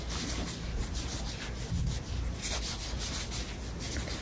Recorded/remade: recorded